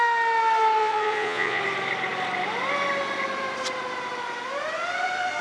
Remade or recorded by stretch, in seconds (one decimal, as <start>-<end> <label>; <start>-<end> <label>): 0.0-0.8 recorded; 0.8-1.6 remade; 1.6-5.4 recorded